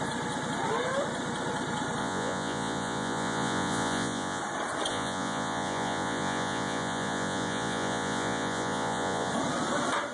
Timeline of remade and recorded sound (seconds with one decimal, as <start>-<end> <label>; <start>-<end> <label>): 0.0-2.0 recorded; 2.0-4.4 remade; 4.4-4.9 recorded; 4.9-9.3 remade; 9.3-10.1 recorded